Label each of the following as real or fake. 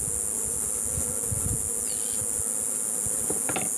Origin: real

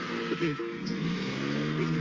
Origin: fake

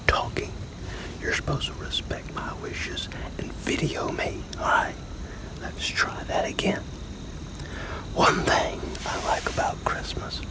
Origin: real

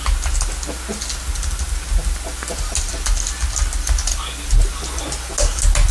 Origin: real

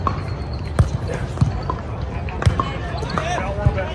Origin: real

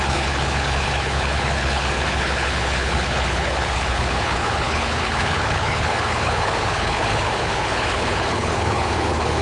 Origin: fake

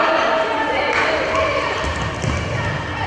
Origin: real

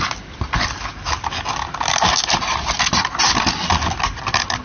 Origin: real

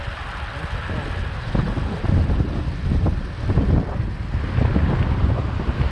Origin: real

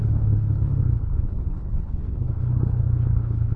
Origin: fake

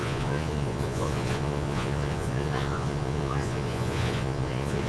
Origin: fake